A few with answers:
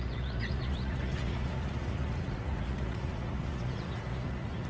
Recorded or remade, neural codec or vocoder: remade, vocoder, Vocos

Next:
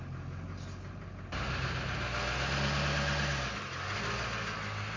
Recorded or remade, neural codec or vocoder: recorded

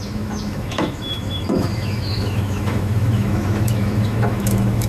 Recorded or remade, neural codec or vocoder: remade, autoencoder, DAC-VAE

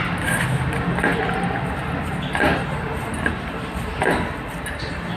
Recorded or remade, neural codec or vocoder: recorded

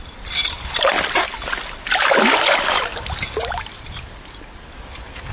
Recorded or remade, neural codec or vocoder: recorded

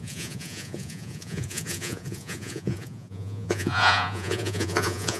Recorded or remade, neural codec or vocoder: remade, vocoder, Vocos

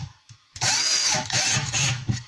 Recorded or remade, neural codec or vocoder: remade, autoencoder, DAC-VAE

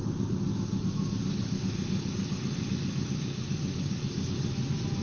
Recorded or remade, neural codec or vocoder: recorded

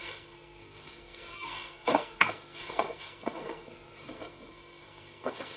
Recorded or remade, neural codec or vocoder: remade, codec, SNAC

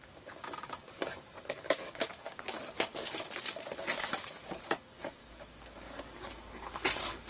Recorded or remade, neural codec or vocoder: remade, codec, DAC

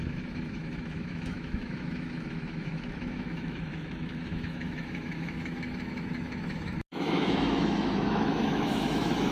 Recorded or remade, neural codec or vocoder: remade, autoencoder, DAC-VAE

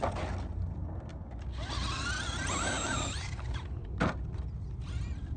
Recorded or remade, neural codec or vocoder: recorded